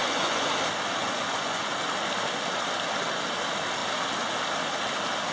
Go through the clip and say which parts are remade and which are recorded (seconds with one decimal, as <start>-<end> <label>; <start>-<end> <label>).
0.0-0.5 remade; 0.5-1.0 recorded; 1.0-1.7 remade; 1.7-5.3 recorded